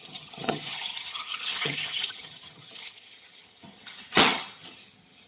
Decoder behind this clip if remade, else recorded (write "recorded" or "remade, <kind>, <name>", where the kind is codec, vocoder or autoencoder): remade, vocoder, HiFi-GAN